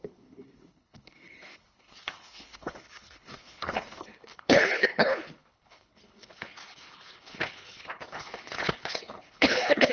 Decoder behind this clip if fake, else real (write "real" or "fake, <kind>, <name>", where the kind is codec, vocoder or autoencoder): fake, codec, HILCodec